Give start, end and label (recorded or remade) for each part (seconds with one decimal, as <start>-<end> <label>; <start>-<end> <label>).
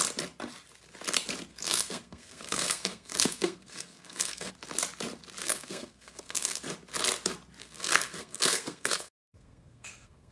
0.0-1.5 recorded; 1.5-4.5 remade; 4.5-5.4 recorded; 5.4-6.6 remade; 6.6-7.6 recorded; 7.6-10.3 remade